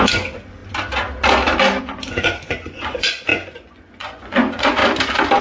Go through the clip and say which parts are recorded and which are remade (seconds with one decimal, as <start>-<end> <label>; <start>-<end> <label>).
0.0-0.6 remade; 0.6-1.8 recorded; 1.8-4.8 remade; 4.8-5.4 recorded